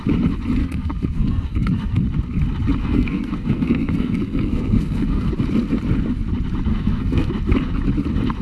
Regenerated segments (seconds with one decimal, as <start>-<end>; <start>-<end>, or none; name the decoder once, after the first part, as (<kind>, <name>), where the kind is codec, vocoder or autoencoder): 0.6-2.0 (codec, SNAC); 2.8-5.3; 6.7-7.3